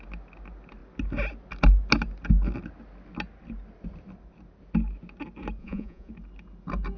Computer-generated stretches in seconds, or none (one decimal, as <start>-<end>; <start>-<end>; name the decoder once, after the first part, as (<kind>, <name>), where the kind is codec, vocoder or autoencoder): 5.6-6.1 (vocoder, Vocos)